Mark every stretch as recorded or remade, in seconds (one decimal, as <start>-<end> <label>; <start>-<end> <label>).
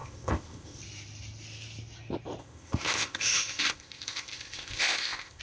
0.0-0.8 remade; 0.8-2.4 recorded; 2.4-5.4 remade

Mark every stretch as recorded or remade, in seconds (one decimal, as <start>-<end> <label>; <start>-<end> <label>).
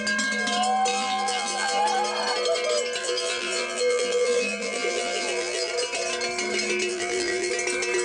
0.0-0.9 recorded; 0.9-1.8 remade; 1.8-3.0 recorded; 3.0-5.7 remade; 5.7-6.9 recorded; 6.9-7.5 remade; 7.5-8.0 recorded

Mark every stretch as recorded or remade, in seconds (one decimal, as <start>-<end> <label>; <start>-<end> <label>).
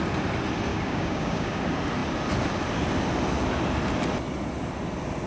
0.0-0.7 recorded; 0.7-1.6 remade; 1.6-5.3 recorded